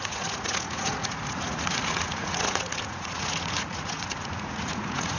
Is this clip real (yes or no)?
no